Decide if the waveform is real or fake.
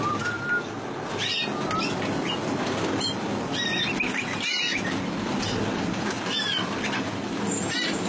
real